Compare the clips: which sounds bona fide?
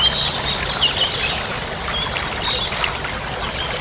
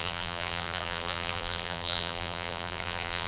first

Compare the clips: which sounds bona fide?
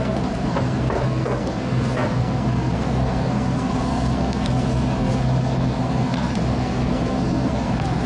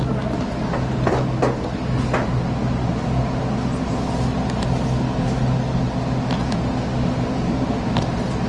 second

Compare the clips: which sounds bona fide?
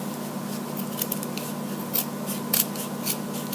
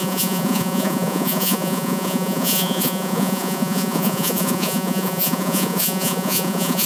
first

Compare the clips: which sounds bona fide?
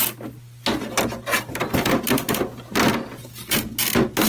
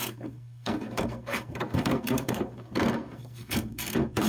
first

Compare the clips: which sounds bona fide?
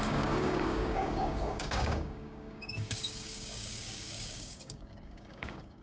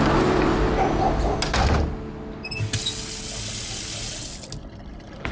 second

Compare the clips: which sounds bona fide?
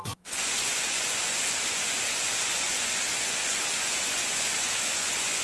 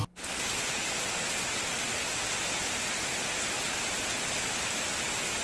second